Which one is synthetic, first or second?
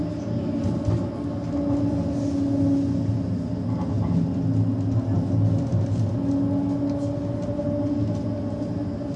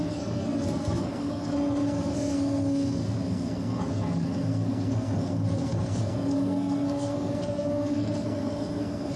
second